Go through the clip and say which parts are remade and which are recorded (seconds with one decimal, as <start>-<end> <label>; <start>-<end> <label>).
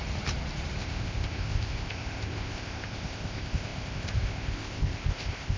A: 0.0-0.8 recorded; 0.8-5.6 remade